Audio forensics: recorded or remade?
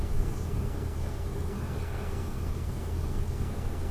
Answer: remade